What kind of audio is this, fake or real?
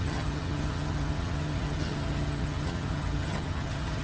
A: fake